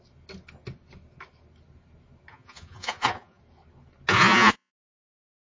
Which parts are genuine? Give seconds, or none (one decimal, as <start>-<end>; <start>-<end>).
0.0-2.3; 3.4-4.1; 4.7-5.5